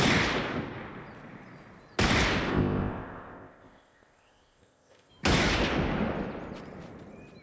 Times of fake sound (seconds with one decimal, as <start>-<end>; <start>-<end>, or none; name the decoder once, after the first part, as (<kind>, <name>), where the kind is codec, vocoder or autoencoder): 2.5-5.1 (codec, ZipCodec)